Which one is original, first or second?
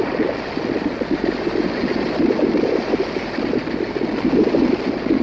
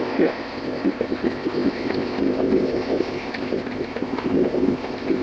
first